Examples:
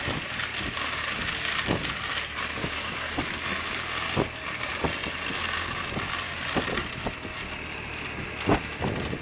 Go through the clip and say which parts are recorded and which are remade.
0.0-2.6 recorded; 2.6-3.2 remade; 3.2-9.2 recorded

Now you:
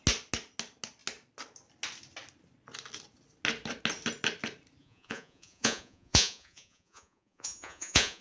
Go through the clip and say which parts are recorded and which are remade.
0.0-4.8 recorded; 4.8-8.2 remade

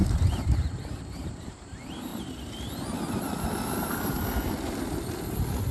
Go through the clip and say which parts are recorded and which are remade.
0.0-2.1 remade; 2.1-5.7 recorded